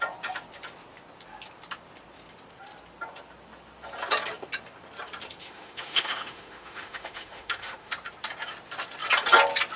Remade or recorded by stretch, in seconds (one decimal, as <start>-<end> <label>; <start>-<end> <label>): 0.0-5.4 recorded; 5.4-7.9 remade; 7.9-9.8 recorded